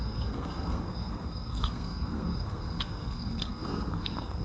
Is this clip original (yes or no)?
no